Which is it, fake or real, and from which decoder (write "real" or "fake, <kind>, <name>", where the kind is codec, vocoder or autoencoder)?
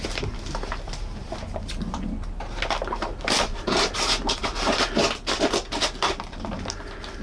real